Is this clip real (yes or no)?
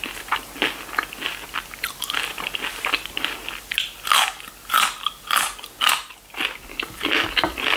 yes